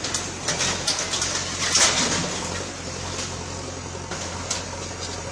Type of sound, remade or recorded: recorded